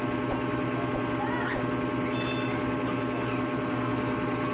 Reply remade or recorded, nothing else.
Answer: recorded